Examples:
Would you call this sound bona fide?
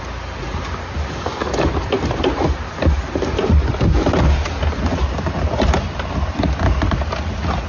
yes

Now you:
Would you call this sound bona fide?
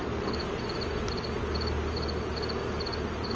yes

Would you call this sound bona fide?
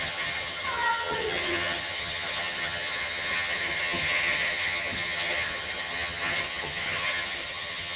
no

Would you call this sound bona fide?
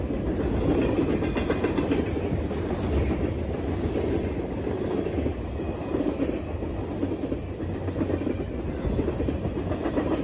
yes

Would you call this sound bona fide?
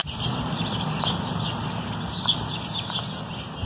yes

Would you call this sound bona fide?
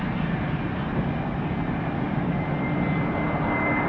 yes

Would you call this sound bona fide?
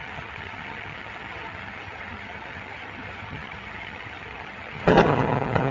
no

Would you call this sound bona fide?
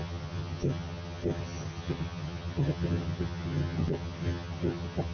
no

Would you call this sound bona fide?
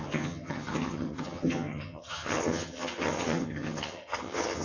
no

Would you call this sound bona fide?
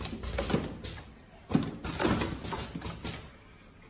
yes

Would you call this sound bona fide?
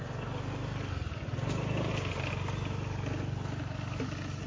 yes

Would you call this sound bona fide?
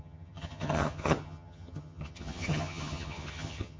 no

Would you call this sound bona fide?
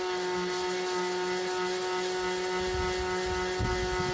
yes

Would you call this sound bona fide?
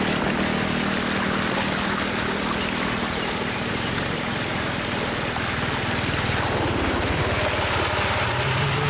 yes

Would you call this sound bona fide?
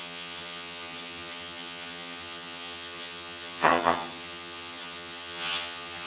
no